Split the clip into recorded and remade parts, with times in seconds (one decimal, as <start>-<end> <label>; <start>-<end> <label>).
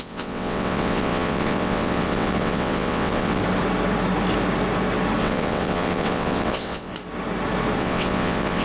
0.0-3.4 remade; 3.4-5.2 recorded; 5.2-6.9 remade; 6.9-7.8 recorded; 7.8-8.6 remade